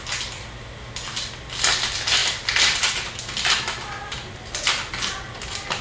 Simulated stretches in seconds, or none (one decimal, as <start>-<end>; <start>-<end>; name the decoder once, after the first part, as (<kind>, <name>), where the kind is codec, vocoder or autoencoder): none